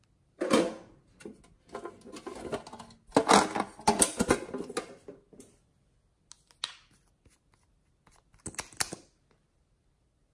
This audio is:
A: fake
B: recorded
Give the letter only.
B